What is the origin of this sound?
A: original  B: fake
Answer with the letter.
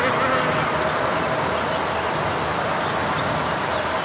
A